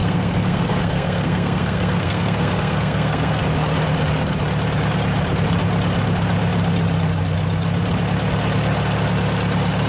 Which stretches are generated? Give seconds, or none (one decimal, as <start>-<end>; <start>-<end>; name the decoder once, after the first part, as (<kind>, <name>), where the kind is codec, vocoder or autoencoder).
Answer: 0.0-3.4 (codec, SNAC)